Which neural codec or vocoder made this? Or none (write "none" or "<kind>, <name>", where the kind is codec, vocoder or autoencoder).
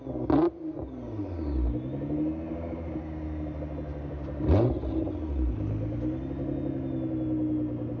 none